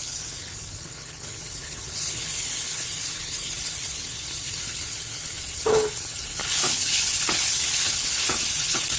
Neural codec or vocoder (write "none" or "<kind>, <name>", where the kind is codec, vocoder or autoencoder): codec, HILCodec